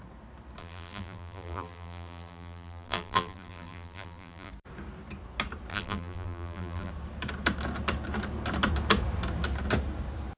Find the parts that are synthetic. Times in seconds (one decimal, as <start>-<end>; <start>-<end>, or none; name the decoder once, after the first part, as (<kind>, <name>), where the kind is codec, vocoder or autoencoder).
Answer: 0.6-4.5 (vocoder, BigVGAN v2); 5.7-6.9